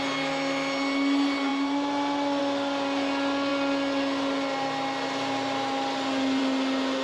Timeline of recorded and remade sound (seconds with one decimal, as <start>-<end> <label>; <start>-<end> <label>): 0.0-7.0 recorded